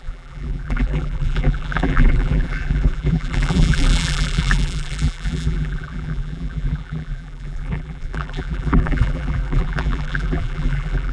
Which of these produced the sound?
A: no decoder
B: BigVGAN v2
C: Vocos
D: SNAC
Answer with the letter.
B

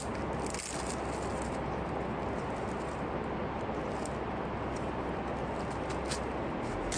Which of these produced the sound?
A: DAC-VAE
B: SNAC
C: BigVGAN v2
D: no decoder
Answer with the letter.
D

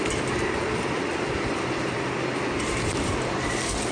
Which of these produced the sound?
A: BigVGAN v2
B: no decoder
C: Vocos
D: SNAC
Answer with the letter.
A